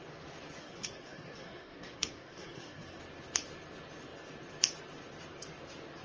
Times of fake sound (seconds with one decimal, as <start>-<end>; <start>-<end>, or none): 0.6-3.0